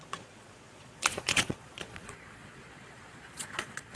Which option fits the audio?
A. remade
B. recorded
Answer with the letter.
A